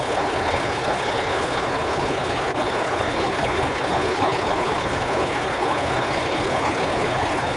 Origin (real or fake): fake